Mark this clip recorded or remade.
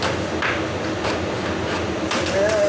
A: recorded